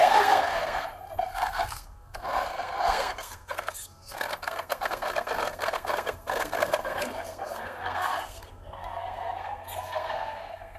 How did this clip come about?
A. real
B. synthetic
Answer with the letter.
B